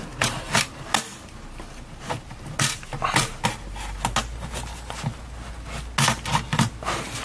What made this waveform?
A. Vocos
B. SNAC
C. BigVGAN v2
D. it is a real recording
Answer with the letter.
D